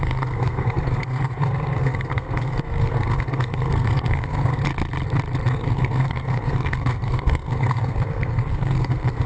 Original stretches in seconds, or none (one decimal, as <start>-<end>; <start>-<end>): 4.6-5.5